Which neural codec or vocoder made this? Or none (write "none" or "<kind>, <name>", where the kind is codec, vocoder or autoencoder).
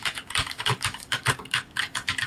codec, DAC